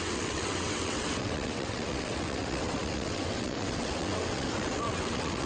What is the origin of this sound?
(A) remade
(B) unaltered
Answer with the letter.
A